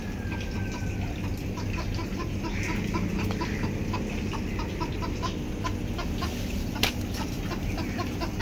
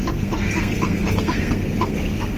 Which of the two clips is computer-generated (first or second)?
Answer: second